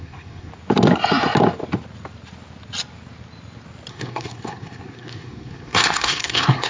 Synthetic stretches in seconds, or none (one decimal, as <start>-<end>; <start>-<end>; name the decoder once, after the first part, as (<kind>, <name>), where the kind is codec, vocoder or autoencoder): 0.0-0.5 (codec, SNAC); 3.9-6.7